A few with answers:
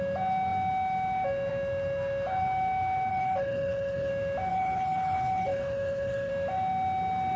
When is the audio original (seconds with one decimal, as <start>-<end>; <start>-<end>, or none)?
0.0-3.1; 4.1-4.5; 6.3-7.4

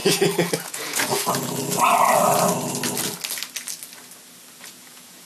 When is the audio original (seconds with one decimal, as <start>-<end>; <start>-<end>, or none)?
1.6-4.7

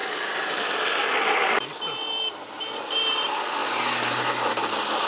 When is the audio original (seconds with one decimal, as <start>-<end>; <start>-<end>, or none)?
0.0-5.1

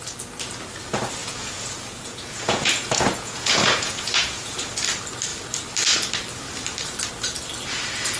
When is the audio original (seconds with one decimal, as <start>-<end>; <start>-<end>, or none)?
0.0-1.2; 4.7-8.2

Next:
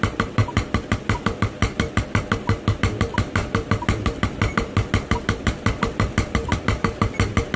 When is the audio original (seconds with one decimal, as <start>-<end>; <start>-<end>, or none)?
0.0-7.6

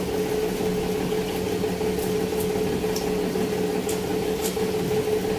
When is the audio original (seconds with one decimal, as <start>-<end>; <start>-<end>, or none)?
0.0-4.1; 5.0-5.4

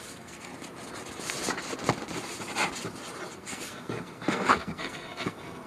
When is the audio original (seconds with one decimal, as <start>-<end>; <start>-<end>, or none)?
0.5-3.3

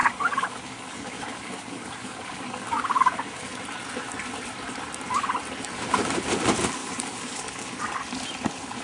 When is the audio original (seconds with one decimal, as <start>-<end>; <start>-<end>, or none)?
3.6-6.8; 7.8-8.8